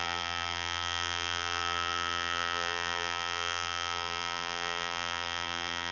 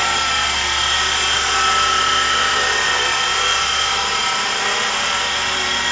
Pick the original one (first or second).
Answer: second